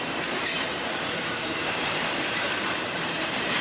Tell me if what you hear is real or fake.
fake